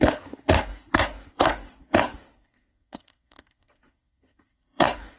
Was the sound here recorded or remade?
remade